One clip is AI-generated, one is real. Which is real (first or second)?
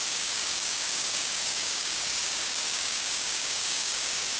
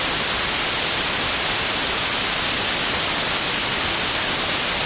second